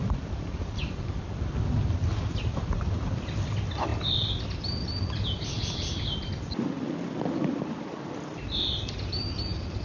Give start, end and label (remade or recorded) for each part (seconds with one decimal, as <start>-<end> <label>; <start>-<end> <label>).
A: 0.0-9.8 recorded